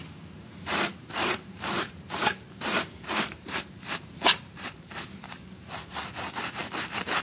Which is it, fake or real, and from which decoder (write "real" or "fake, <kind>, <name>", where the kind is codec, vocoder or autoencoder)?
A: fake, vocoder, BigVGAN v2